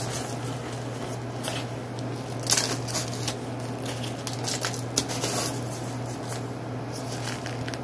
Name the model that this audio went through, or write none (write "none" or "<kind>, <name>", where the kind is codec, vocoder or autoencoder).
none